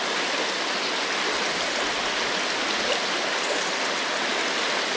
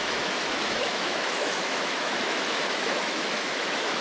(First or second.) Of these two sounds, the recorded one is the first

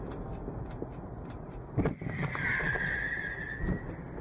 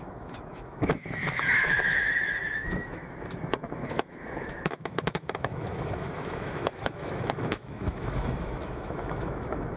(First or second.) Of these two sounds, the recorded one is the first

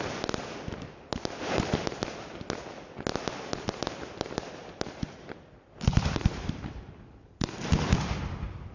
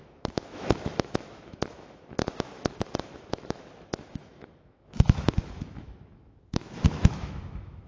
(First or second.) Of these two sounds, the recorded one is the first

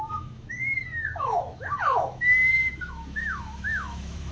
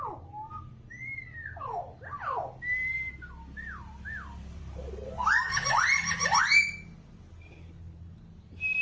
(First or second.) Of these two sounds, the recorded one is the second